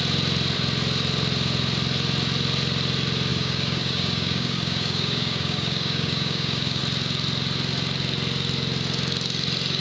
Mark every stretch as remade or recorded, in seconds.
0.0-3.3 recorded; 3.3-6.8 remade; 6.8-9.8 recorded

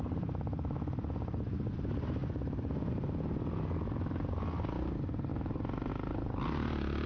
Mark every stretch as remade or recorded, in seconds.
0.0-7.1 recorded

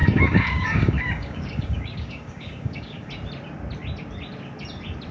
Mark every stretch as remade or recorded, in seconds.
0.0-3.1 remade; 3.1-5.1 recorded

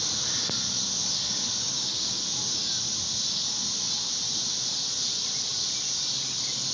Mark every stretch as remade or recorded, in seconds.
0.0-1.6 recorded; 1.6-2.2 remade; 2.2-6.7 recorded

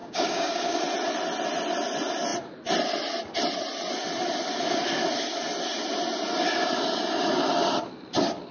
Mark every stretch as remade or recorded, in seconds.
0.0-0.8 remade; 0.8-8.5 recorded

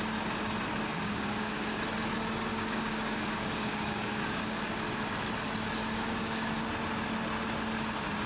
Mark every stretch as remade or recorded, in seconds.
0.0-0.9 recorded; 0.9-1.8 remade; 1.8-2.5 recorded; 2.5-4.6 remade; 4.6-5.8 recorded; 5.8-6.5 remade; 6.5-8.3 recorded

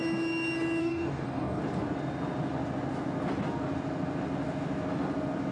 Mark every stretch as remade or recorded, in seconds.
0.0-0.8 recorded; 0.8-1.6 remade; 1.6-5.5 recorded

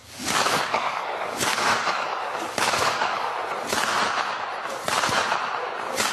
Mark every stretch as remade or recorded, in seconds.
0.0-3.3 remade; 3.3-6.1 recorded